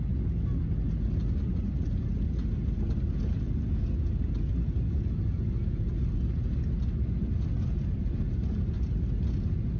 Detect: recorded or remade recorded